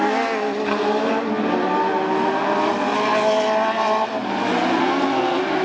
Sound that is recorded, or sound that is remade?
recorded